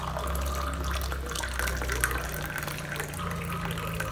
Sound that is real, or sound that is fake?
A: real